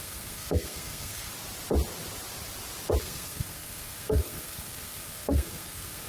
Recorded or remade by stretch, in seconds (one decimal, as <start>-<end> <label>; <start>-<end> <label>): 0.0-1.3 remade; 1.3-3.0 recorded; 3.0-6.1 remade